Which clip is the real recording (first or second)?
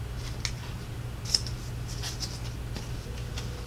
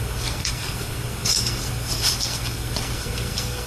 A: first